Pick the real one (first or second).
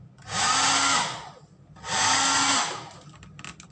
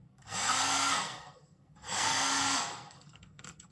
first